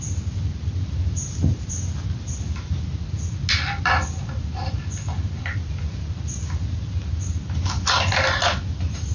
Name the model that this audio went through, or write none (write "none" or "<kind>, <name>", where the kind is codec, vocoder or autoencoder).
none